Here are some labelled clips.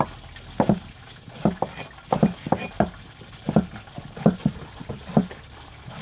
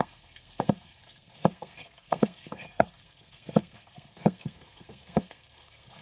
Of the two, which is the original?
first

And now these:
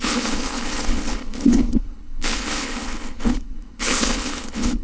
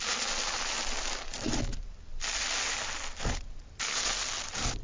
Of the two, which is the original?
second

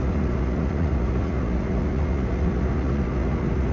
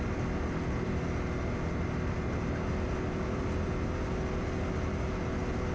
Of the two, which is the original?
second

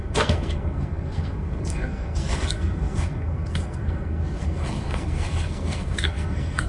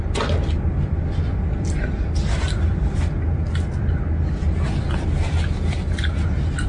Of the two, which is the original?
second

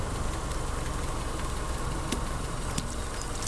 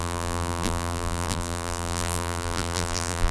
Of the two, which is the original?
first